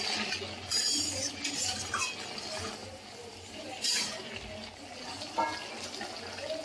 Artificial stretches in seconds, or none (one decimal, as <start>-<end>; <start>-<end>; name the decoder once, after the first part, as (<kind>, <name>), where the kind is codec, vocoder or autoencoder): 0.7-1.9 (vocoder, BigVGAN v2); 2.8-4.2